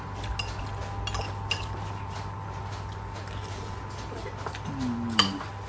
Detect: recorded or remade recorded